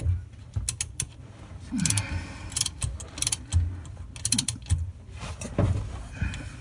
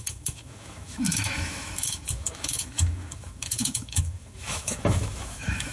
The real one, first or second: first